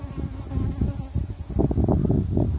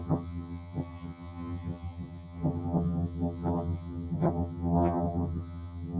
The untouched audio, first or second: first